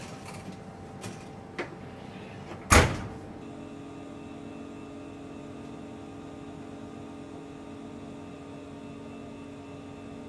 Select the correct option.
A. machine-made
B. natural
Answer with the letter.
B